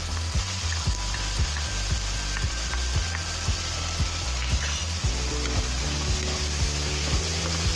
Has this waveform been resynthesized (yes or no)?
no